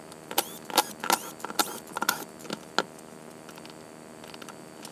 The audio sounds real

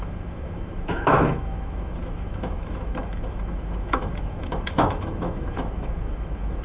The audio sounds fake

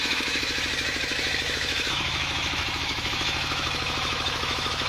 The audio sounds fake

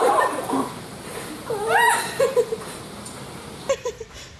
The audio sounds real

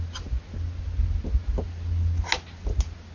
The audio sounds real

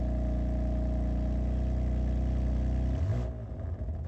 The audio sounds real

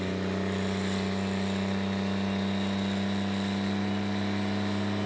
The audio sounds real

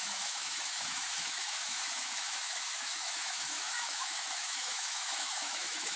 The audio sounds fake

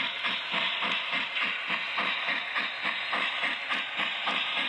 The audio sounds real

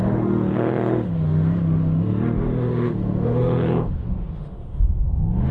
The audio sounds fake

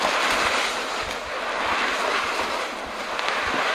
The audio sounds real